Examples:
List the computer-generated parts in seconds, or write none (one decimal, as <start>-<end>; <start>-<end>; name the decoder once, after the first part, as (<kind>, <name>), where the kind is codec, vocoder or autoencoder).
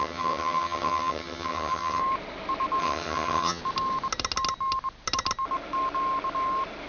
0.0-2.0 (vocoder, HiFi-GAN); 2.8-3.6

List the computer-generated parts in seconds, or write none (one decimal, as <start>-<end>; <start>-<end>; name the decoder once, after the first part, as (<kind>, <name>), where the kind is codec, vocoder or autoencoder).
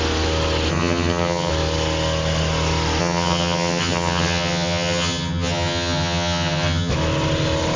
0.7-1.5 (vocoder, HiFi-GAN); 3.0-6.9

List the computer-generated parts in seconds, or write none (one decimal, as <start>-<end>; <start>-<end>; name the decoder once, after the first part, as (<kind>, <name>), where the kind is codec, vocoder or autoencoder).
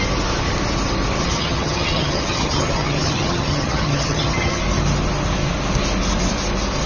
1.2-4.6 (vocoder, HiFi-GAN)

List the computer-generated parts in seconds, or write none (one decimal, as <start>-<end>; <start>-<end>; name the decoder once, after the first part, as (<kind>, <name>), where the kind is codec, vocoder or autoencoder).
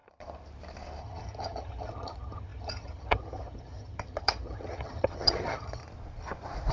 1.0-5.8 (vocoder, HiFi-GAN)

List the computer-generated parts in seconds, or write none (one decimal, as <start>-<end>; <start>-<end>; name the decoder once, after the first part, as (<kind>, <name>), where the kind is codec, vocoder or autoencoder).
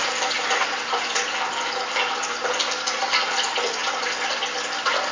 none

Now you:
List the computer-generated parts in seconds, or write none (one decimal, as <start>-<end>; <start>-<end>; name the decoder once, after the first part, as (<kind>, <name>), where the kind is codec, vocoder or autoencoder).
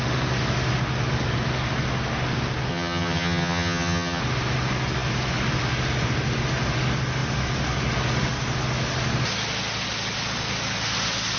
2.7-4.2 (vocoder, HiFi-GAN)